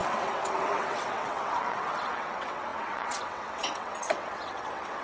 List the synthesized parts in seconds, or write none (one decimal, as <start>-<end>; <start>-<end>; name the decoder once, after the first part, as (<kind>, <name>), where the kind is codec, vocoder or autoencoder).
0.0-5.0 (vocoder, WaveNeXt)

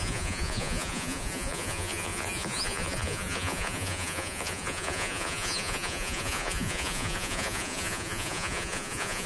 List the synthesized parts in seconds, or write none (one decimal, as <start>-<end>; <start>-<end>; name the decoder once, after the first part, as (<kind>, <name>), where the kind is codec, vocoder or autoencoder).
0.0-9.3 (vocoder, Vocos)

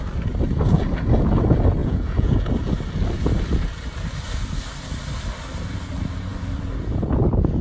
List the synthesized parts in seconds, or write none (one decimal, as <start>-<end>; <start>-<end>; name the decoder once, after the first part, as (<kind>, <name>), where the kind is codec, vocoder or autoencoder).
1.8-2.5 (vocoder, Vocos)